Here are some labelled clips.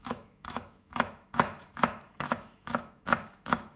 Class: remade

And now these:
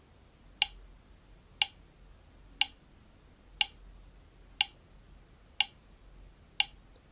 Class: recorded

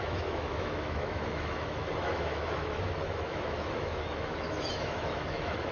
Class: remade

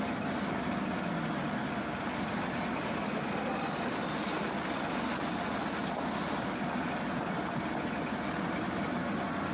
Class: recorded